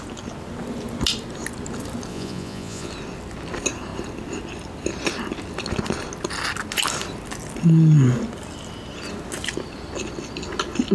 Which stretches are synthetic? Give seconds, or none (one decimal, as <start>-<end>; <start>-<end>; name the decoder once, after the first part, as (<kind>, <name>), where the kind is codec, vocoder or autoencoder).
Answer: 2.1-2.9 (vocoder, Vocos)